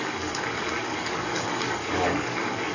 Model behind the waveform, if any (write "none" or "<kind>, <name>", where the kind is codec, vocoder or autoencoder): codec, DAC